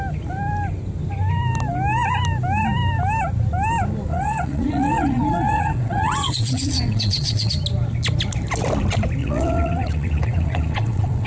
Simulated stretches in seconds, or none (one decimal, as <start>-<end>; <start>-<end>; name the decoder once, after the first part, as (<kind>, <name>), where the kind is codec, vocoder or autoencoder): 4.1-7.5 (vocoder, WaveNeXt); 9.2-11.3